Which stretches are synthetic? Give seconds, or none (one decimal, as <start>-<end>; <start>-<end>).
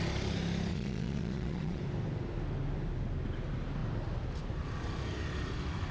0.7-1.8